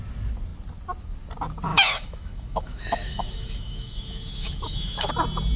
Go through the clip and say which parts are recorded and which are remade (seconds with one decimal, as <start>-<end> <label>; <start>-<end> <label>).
0.0-1.7 recorded; 1.7-5.1 remade; 5.1-5.6 recorded